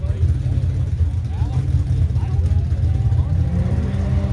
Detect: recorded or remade recorded